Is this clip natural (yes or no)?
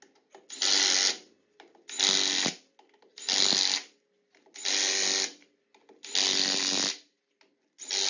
yes